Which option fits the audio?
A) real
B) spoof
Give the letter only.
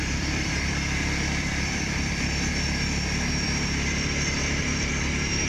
B